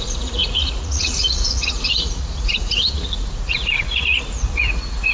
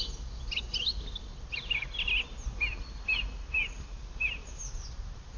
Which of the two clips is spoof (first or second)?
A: first